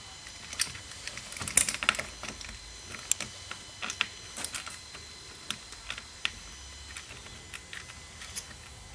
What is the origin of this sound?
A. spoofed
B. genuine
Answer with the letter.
B